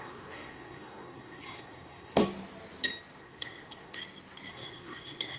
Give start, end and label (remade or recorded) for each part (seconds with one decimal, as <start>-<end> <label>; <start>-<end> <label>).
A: 0.0-2.2 remade; 2.2-3.2 recorded; 3.2-4.0 remade; 4.0-4.5 recorded; 4.5-5.4 remade

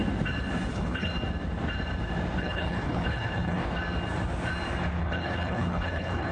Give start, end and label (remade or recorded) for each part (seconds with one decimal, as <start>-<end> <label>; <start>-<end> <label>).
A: 0.0-0.7 recorded; 0.7-1.1 remade; 1.1-2.4 recorded; 2.4-3.6 remade; 3.6-5.0 recorded; 5.0-6.3 remade

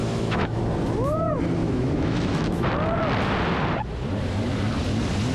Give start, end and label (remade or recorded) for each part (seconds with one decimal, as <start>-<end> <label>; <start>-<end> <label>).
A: 0.0-0.6 remade; 0.6-1.6 recorded; 1.6-2.7 remade; 2.7-5.3 recorded